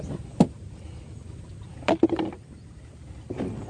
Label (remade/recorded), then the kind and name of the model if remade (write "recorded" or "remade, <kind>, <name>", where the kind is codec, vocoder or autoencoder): recorded